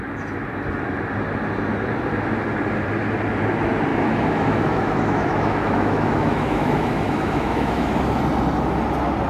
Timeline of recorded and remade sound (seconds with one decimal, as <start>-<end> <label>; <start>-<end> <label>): 0.0-3.9 recorded; 3.9-8.2 remade; 8.2-9.3 recorded